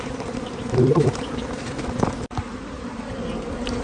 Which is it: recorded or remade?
remade